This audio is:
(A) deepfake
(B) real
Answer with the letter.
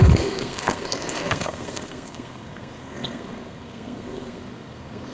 A